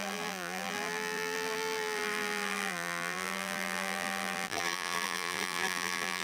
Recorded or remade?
remade